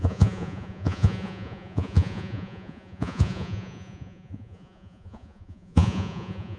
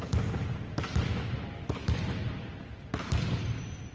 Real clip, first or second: second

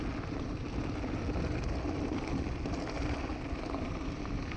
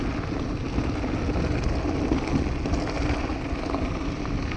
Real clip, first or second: second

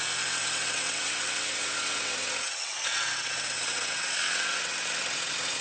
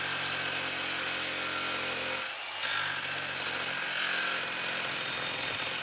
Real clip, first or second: second